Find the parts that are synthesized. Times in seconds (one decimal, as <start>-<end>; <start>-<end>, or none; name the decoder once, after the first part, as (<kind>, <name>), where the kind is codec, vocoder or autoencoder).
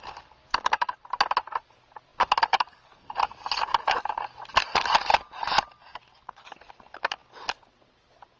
none